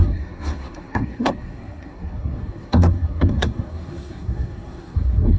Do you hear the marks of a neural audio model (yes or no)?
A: yes